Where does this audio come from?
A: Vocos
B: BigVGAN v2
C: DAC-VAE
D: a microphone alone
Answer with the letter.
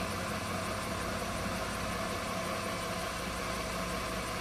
D